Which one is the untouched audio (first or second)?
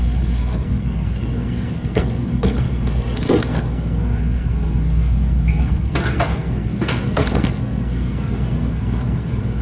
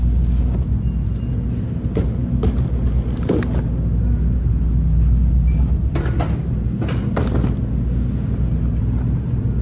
second